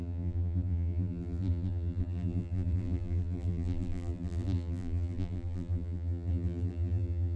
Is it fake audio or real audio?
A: fake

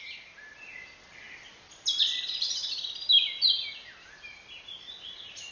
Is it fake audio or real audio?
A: real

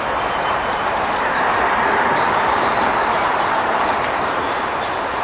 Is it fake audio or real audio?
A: fake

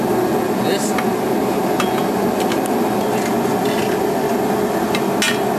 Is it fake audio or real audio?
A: real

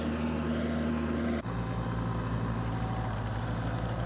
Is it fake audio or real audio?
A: real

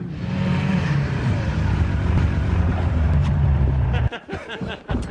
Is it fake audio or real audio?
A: fake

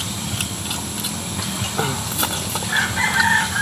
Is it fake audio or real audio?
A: fake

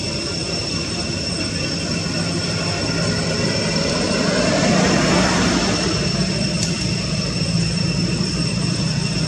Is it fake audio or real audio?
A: fake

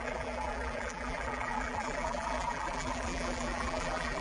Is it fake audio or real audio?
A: fake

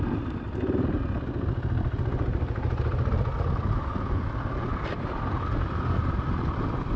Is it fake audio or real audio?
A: real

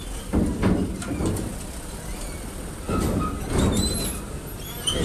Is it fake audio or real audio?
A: real